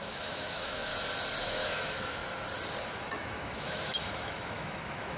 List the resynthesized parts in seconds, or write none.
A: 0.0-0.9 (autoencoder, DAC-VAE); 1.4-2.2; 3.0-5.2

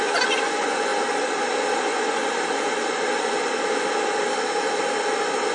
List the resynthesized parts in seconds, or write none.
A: 0.0-0.9 (vocoder, Vocos); 1.8-2.2

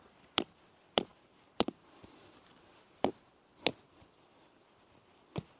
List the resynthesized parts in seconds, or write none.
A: none

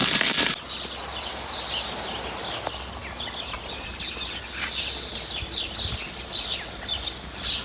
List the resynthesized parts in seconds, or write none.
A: none

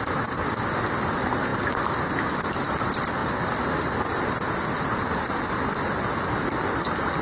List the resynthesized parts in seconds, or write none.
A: none

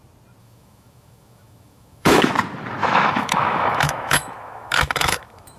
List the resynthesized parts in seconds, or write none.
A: 0.4-2.3 (autoencoder, DAC-VAE); 2.8-5.6

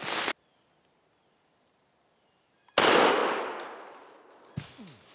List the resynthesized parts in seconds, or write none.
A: none